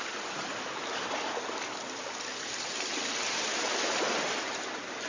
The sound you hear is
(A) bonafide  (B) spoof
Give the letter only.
A